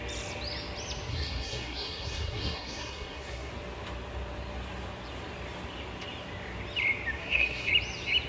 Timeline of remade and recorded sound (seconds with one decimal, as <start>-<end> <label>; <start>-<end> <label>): 0.0-1.1 recorded; 1.1-3.5 remade; 3.5-7.2 recorded; 7.2-7.7 remade; 7.7-8.3 recorded